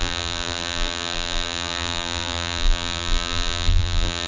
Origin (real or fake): fake